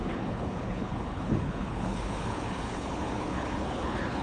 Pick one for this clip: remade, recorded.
remade